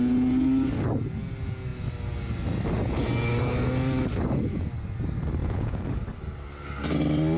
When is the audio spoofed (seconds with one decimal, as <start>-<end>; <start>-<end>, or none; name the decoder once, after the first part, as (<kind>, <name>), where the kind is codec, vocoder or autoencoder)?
5.4-6.0 (vocoder, Vocos)